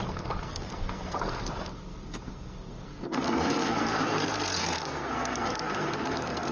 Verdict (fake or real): fake